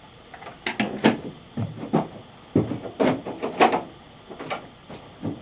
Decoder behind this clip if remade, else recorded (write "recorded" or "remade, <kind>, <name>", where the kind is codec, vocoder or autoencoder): recorded